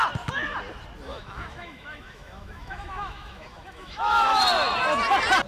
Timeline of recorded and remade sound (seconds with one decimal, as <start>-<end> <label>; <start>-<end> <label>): 0.0-1.1 recorded; 1.1-4.4 remade; 4.4-5.5 recorded